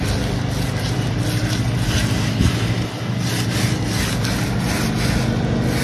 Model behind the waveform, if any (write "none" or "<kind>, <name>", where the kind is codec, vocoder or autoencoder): none